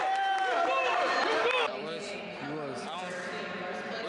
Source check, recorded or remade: recorded